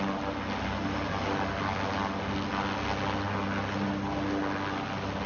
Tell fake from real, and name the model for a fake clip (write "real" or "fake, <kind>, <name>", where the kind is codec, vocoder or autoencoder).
real